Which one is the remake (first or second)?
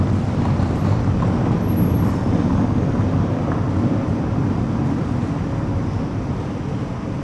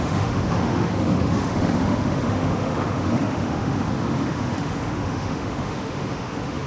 second